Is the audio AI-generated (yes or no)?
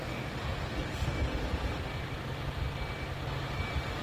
no